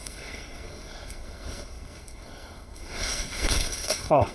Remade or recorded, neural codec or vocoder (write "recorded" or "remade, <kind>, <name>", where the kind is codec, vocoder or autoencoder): remade, codec, SNAC